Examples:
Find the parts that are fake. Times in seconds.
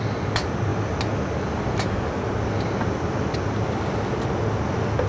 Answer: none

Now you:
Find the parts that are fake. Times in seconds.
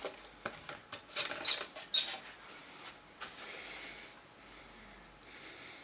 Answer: none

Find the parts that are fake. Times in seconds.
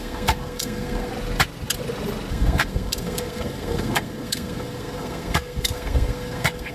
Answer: 0.0-1.1 (codec, SNAC); 2.3-6.7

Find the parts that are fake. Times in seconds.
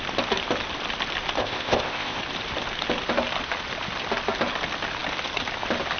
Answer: 1.4-2.2 (codec, ZipCodec)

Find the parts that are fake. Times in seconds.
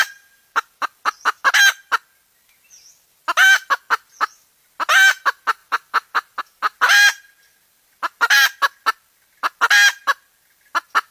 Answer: none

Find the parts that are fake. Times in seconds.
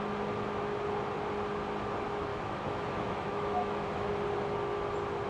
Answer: 2.3-4.1 (autoencoder, DAC-VAE)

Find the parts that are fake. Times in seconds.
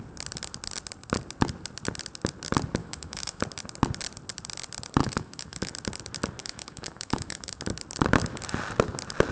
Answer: 2.8-3.4 (autoencoder, DAC-VAE); 5.0-5.7; 6.4-7.6